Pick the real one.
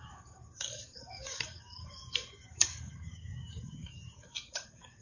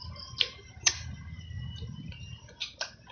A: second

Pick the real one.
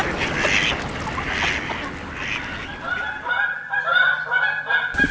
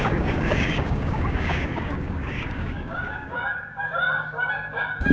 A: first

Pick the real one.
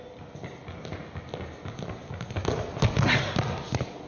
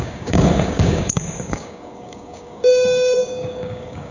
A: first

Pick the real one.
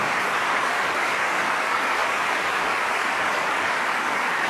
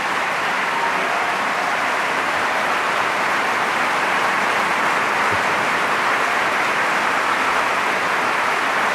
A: second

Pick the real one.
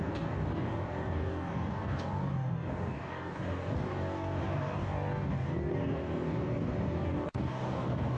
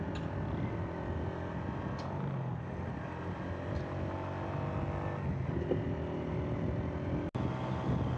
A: second